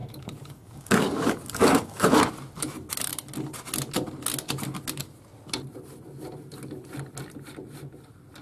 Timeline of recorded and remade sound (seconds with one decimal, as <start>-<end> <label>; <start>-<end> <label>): 0.0-2.3 remade; 2.3-8.4 recorded

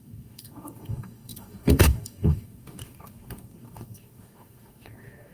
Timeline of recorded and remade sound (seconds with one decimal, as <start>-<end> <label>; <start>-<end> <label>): 0.0-5.3 remade

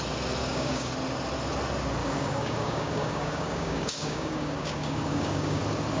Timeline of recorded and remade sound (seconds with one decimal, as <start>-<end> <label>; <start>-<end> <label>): 0.0-0.4 recorded; 0.4-0.9 remade; 0.9-2.0 recorded; 2.0-5.6 remade; 5.6-6.0 recorded